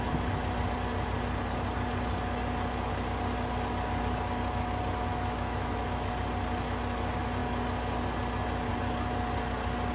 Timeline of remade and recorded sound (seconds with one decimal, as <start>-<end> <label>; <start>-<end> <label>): 0.0-5.1 recorded; 5.1-6.1 remade; 6.1-9.9 recorded